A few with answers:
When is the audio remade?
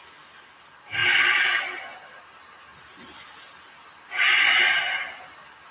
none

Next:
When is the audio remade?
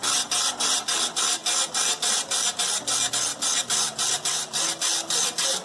none